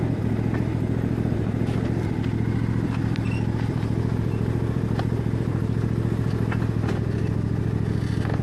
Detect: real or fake real